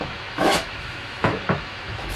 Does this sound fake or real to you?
fake